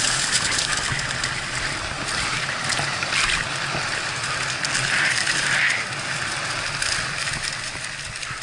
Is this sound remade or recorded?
recorded